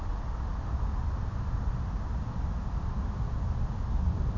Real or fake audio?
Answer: real